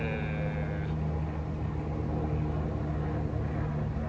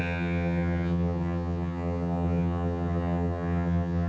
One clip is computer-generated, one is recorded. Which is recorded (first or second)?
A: first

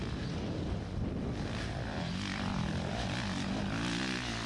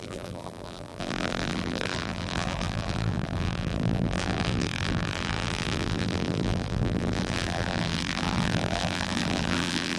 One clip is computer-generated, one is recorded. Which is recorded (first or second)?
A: first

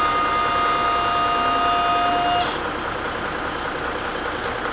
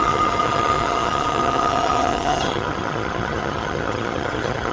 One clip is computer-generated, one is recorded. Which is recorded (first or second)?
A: first